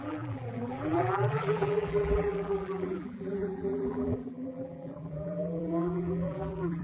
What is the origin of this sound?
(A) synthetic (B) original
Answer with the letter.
A